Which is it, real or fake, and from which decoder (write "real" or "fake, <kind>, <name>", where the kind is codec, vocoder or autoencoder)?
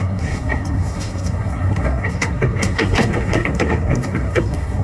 fake, codec, SNAC